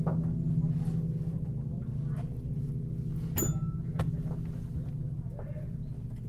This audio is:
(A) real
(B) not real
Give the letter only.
A